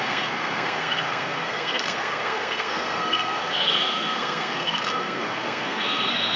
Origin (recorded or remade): remade